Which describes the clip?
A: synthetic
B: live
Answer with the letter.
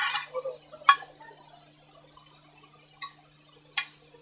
B